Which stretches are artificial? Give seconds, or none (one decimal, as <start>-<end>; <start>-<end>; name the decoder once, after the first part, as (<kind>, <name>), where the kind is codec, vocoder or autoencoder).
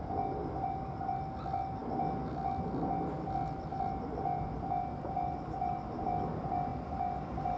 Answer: none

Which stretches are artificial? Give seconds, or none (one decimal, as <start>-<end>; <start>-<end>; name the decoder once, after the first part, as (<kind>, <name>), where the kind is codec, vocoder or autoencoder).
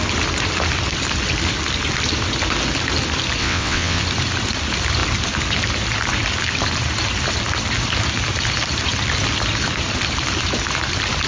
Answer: 3.4-4.0 (vocoder, WaveNeXt)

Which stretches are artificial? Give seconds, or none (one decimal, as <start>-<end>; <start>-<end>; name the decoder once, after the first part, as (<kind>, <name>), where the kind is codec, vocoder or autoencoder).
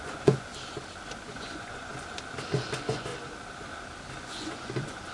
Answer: 0.0-0.5 (vocoder, Vocos); 1.2-1.9; 2.6-3.1; 4.2-5.1